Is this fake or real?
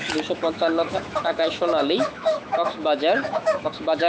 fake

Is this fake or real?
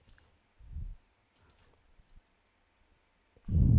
real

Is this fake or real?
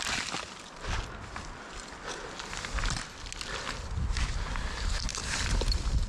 real